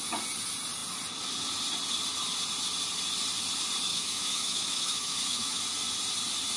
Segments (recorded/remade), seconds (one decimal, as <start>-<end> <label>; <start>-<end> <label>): 0.0-3.9 recorded; 3.9-5.6 remade; 5.6-6.6 recorded